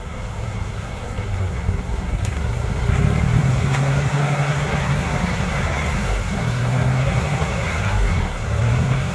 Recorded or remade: remade